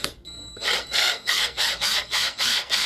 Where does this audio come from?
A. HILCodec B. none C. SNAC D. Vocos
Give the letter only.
C